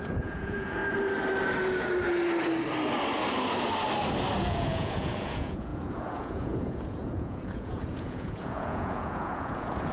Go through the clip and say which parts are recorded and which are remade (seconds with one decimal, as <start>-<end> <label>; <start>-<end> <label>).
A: 0.0-0.8 remade; 0.8-4.4 recorded; 4.4-9.9 remade